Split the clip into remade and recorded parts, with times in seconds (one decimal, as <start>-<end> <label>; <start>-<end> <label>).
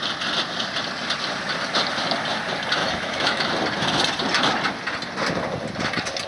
0.0-2.8 recorded; 2.8-3.5 remade; 3.5-6.3 recorded